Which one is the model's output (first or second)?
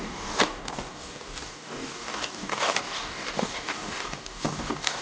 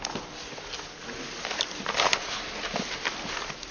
first